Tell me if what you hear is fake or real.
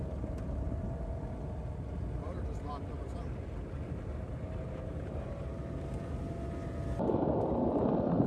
real